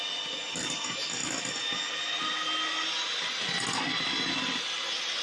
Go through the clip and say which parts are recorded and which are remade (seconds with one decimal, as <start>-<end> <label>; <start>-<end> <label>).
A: 0.0-5.2 recorded